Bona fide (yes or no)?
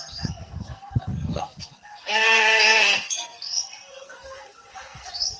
no